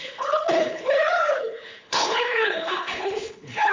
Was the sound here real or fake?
fake